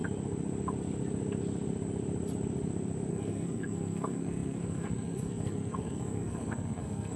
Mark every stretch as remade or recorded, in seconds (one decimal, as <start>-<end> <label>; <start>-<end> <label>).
0.0-3.1 recorded; 3.1-7.2 remade